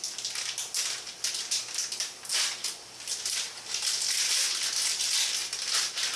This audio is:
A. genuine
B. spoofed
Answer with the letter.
A